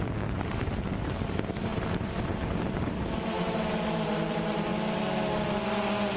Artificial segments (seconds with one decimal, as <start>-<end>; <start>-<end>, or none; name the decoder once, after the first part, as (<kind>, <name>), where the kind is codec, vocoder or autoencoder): 0.0-4.7 (vocoder, BigVGAN v2)